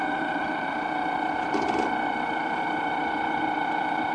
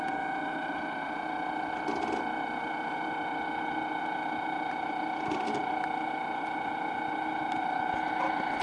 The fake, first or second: first